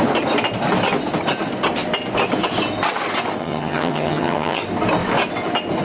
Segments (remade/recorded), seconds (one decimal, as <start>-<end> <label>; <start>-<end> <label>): 0.0-3.4 recorded; 3.4-4.6 remade; 4.6-5.8 recorded